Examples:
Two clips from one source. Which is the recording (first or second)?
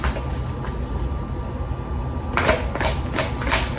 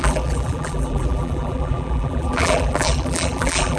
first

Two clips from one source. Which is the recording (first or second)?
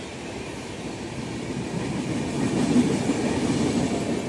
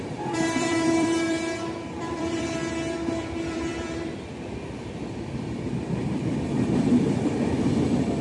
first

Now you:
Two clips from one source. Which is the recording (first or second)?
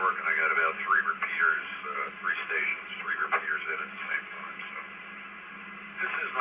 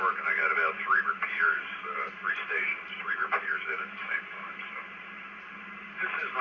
first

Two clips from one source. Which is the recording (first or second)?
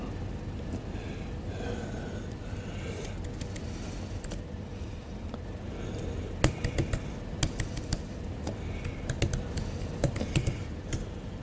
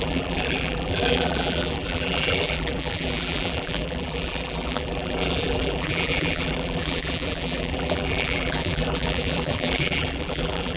first